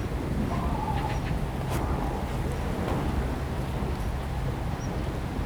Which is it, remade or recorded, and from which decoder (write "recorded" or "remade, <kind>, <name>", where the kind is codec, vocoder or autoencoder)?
recorded